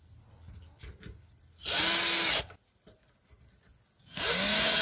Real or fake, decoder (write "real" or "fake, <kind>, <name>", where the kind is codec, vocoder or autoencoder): real